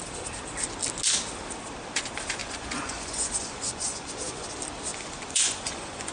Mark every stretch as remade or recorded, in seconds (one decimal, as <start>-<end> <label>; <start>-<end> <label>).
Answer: 0.0-2.4 recorded; 2.4-4.5 remade; 4.5-4.9 recorded; 4.9-6.1 remade